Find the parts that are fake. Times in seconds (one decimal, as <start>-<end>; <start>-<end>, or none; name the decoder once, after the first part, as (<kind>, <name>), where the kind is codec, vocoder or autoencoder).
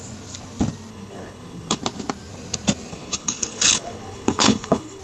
0.9-1.8 (codec, HILCodec); 2.9-5.0